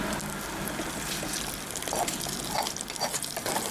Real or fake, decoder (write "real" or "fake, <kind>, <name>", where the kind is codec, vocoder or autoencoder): real